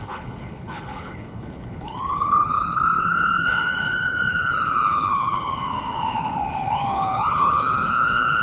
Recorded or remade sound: remade